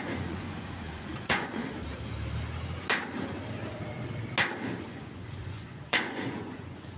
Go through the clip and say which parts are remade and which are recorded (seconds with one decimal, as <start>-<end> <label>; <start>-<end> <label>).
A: 0.0-1.6 remade; 1.6-4.8 recorded; 4.8-7.0 remade